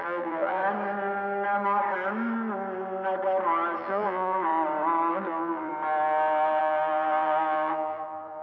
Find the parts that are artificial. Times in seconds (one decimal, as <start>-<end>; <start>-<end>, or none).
0.0-0.6; 3.8-4.5; 5.1-5.7; 6.6-8.4